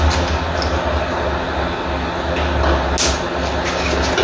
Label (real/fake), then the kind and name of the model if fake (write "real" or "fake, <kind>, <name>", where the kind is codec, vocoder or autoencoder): real